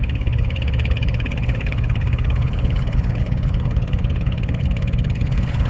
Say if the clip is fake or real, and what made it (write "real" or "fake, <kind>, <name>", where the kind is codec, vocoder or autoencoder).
fake, codec, HILCodec